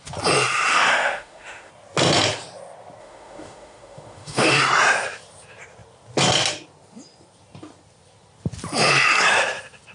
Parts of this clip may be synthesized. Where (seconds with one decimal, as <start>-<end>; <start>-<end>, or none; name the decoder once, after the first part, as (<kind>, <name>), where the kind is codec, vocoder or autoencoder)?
0.7-1.7 (autoencoder, DAC-VAE); 3.0-4.6